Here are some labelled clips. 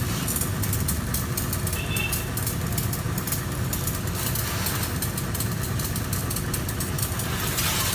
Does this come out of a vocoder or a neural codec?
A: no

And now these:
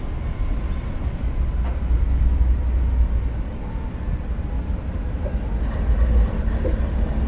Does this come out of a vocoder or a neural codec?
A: no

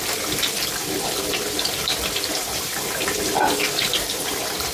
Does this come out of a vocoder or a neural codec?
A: yes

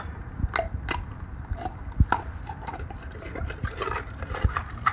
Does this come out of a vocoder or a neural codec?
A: no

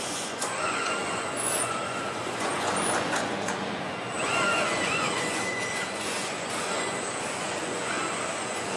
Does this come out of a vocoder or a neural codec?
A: yes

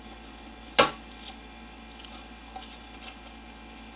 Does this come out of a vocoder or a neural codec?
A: no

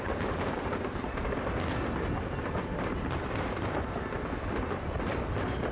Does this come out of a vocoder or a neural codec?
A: no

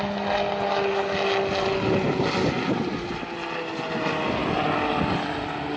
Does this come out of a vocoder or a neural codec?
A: no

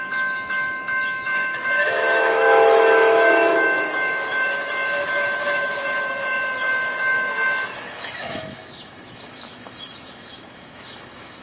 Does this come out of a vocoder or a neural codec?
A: yes